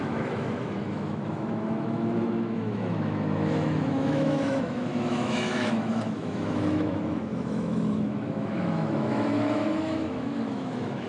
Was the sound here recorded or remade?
remade